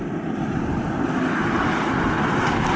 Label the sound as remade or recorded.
recorded